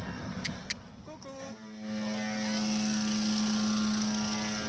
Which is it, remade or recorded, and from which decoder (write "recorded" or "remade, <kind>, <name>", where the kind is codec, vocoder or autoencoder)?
recorded